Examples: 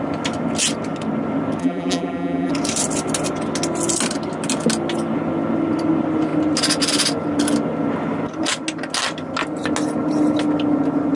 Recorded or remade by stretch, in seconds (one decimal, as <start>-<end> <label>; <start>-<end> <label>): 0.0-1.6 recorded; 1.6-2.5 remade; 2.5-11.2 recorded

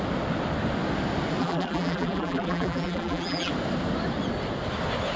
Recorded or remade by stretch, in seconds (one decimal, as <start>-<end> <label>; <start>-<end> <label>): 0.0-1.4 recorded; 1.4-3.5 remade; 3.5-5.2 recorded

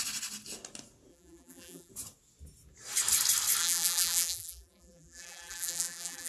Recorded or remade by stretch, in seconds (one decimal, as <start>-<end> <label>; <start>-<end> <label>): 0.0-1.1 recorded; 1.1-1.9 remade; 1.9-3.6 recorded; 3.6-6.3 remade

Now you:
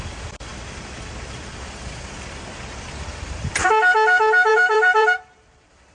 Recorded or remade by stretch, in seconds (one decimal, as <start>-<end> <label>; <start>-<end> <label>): 0.0-3.6 remade; 3.6-4.5 recorded; 4.5-5.9 remade

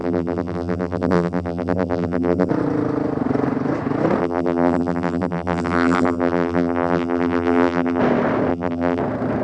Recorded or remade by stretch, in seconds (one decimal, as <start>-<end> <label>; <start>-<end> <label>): 0.0-2.5 remade; 2.5-4.2 recorded; 4.2-8.0 remade; 8.0-8.5 recorded; 8.5-9.0 remade; 9.0-9.4 recorded